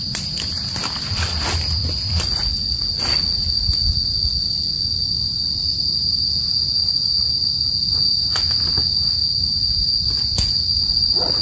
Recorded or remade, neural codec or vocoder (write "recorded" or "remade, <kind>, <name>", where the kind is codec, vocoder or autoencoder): recorded